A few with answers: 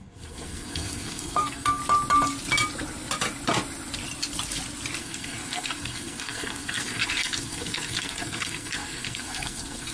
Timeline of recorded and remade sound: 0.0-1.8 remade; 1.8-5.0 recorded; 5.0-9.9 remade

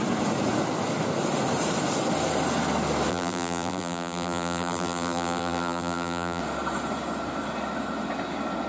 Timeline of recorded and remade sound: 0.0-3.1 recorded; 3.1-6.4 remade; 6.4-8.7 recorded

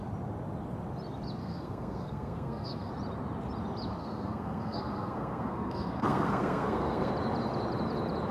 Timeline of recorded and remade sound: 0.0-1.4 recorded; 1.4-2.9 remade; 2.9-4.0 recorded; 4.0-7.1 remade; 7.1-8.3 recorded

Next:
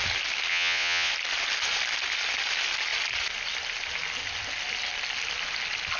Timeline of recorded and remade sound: 0.0-0.5 recorded; 0.5-1.1 remade; 1.1-6.0 recorded

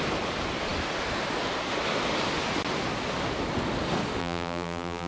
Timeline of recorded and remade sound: 0.0-4.2 recorded; 4.2-5.1 remade